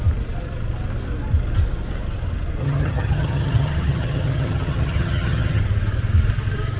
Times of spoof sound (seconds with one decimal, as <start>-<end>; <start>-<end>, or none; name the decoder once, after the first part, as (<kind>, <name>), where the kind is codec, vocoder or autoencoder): 2.6-5.6 (vocoder, HiFi-GAN)